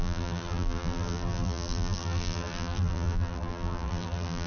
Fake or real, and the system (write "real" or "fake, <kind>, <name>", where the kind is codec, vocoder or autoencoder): fake, vocoder, BigVGAN v2